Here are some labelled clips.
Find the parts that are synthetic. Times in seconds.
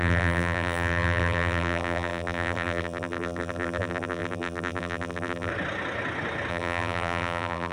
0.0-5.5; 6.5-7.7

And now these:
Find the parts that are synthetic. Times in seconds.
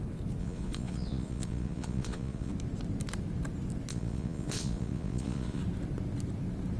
0.4-2.5; 3.9-5.6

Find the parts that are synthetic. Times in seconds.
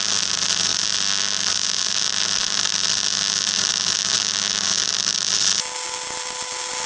none